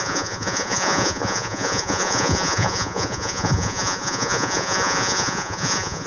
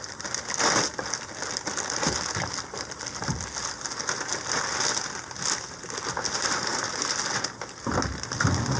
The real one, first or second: second